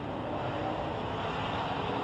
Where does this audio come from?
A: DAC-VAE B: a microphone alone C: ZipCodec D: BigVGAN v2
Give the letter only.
B